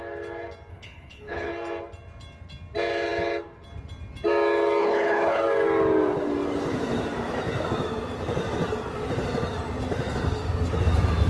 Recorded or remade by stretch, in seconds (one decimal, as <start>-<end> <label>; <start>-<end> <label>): 0.0-0.7 recorded; 0.7-1.5 remade; 1.5-4.8 recorded; 4.8-5.4 remade; 5.4-11.3 recorded